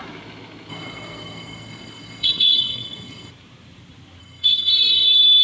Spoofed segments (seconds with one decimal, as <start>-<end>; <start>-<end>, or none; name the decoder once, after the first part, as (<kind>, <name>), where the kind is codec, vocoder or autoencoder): 0.7-3.3 (codec, SNAC); 4.2-5.4